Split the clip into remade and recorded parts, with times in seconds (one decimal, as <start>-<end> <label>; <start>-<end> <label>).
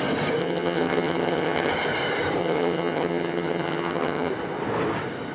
0.0-0.4 recorded; 0.4-1.7 remade; 1.7-2.4 recorded; 2.4-4.3 remade; 4.3-5.3 recorded